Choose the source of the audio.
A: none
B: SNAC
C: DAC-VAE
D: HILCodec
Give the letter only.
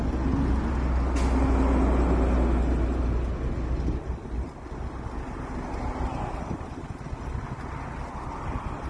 A